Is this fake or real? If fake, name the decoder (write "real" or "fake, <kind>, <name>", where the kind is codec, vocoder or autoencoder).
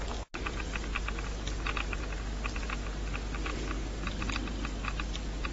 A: real